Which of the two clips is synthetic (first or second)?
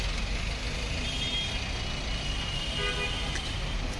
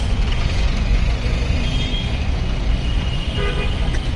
second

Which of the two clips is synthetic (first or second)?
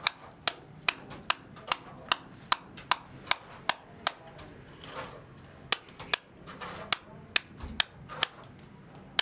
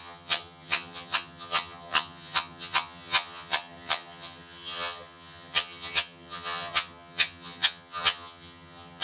second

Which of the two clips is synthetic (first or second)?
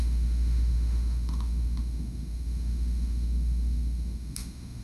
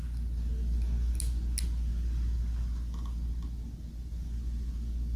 first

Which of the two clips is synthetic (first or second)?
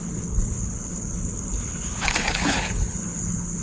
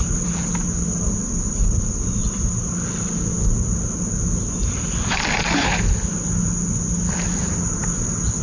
first